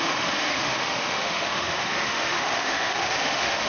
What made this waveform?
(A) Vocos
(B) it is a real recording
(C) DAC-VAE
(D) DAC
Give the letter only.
C